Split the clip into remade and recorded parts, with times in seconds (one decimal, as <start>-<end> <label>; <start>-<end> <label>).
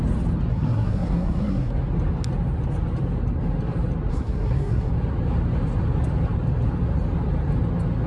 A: 0.0-0.5 recorded; 0.5-1.7 remade; 1.7-4.1 recorded; 4.1-4.9 remade; 4.9-8.1 recorded